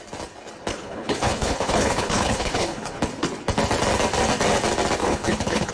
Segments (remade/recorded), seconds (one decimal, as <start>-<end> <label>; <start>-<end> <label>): 0.0-0.7 recorded; 0.7-3.0 remade; 3.0-5.0 recorded; 5.0-5.7 remade